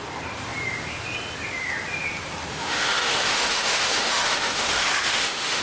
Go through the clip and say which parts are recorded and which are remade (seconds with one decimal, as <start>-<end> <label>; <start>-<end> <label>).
0.0-2.5 recorded; 2.5-5.6 remade